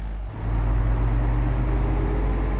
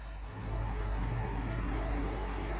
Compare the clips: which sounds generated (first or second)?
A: second